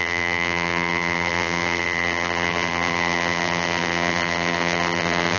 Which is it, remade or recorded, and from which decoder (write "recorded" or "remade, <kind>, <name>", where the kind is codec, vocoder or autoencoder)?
remade, vocoder, BigVGAN v2